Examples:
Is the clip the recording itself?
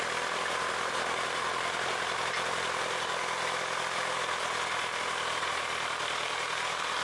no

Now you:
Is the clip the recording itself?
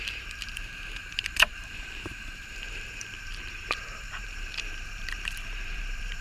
no